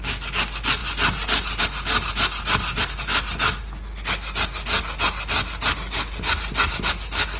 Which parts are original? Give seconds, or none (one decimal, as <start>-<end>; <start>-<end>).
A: 0.0-7.4

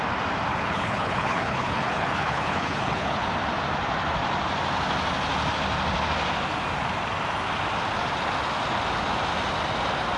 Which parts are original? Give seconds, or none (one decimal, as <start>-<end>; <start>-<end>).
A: 0.0-0.5; 3.3-10.2

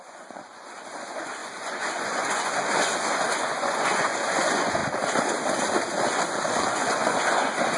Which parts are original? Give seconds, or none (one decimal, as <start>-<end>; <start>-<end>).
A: 4.8-6.1

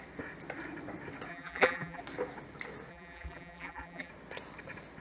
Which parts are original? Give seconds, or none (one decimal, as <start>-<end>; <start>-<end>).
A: 0.0-1.3; 2.0-2.9; 4.1-5.0

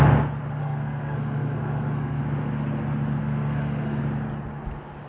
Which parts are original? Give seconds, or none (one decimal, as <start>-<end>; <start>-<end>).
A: 0.0-0.6; 2.2-3.2; 4.0-5.1